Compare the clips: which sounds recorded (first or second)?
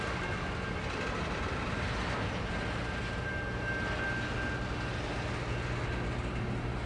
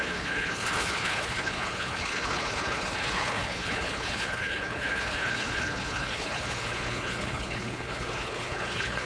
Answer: first